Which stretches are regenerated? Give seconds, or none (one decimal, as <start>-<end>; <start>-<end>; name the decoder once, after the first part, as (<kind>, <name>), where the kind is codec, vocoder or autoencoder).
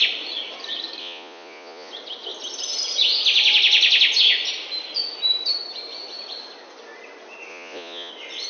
1.0-1.9 (vocoder, Vocos); 7.5-8.1